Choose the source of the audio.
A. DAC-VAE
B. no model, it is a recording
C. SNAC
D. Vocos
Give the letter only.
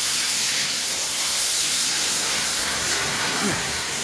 C